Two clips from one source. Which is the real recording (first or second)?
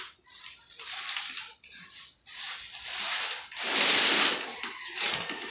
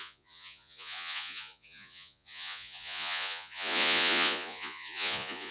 first